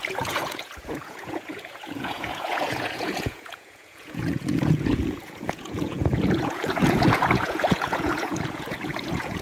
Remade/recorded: remade